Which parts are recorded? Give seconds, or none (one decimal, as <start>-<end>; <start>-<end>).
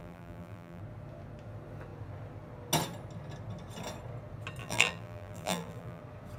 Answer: 0.8-4.6; 6.0-6.4